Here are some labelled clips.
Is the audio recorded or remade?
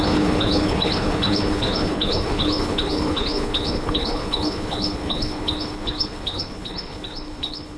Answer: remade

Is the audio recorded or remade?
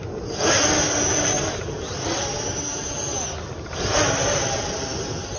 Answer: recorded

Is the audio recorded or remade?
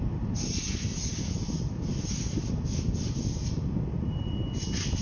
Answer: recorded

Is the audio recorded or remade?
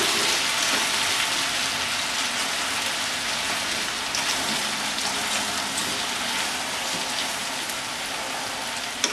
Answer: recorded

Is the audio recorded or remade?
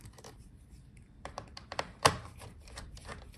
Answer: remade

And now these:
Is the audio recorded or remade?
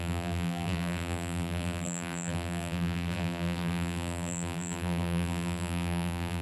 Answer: remade